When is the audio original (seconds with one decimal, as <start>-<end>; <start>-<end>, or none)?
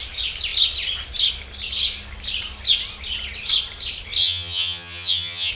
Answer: 0.0-4.2